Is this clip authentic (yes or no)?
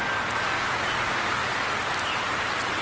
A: yes